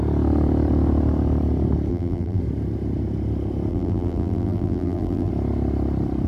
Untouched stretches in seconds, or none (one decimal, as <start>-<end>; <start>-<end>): 0.0-1.9; 2.4-3.7; 5.3-6.3